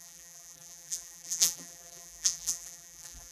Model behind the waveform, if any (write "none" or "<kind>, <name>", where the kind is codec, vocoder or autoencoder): vocoder, BigVGAN v2